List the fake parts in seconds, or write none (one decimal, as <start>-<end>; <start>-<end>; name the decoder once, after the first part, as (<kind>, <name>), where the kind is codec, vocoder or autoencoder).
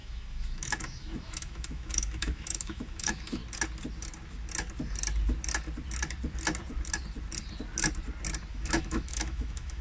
0.0-3.4 (autoencoder, DAC-VAE); 8.5-9.8